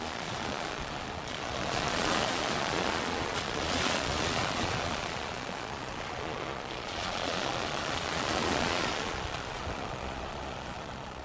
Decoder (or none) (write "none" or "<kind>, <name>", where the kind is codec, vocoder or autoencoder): vocoder, Vocos